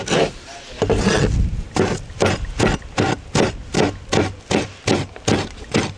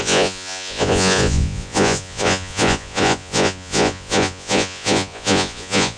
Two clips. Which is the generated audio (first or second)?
second